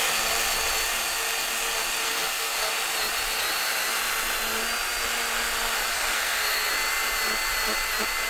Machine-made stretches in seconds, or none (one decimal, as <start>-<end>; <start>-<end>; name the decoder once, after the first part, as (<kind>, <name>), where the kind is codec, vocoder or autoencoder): 2.0-2.7 (codec, SNAC); 5.9-6.7